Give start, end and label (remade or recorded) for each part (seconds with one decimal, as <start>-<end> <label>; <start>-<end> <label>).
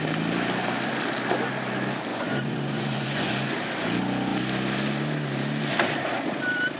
0.0-2.1 recorded; 2.1-3.5 remade; 3.5-6.8 recorded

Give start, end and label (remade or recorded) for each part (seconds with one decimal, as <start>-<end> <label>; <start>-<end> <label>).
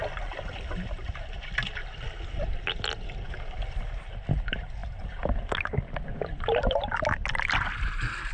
0.0-8.3 recorded